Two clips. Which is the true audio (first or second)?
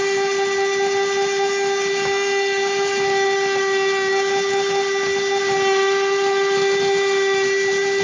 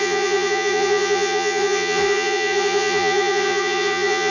first